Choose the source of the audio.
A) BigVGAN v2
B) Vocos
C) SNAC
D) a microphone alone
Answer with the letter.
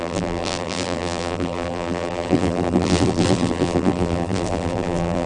A